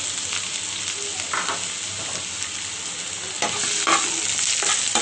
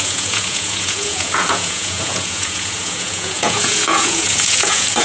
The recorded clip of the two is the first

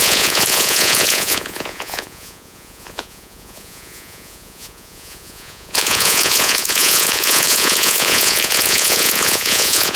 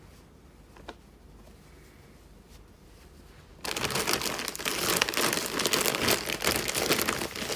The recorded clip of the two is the second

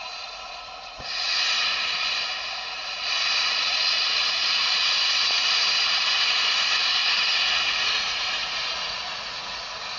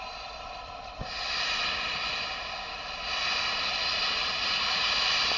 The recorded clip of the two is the second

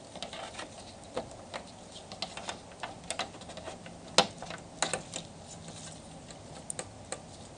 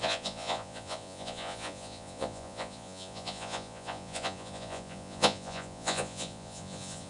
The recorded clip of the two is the first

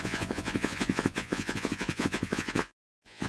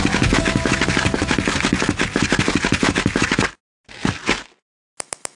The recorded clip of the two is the second